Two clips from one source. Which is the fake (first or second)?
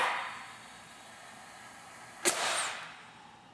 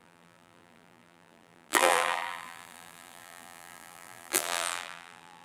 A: second